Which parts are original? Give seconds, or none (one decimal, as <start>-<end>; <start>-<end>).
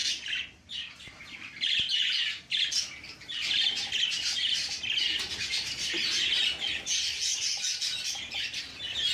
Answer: 0.0-9.1